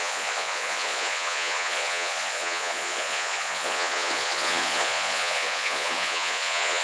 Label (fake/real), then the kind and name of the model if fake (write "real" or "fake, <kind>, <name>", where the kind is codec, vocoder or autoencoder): fake, vocoder, Vocos